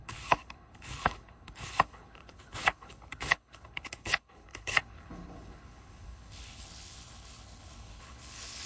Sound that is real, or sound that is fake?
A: fake